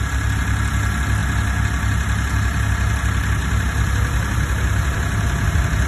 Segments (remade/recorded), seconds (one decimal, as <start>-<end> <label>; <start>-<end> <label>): 0.0-3.4 recorded; 3.4-5.5 remade; 5.5-5.9 recorded